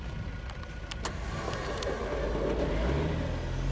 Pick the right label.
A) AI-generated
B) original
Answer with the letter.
B